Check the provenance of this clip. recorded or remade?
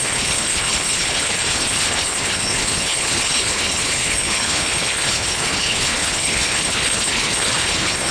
remade